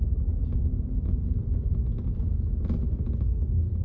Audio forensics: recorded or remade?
recorded